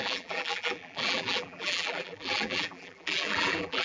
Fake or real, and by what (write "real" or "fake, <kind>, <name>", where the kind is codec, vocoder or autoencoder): fake, vocoder, BigVGAN v2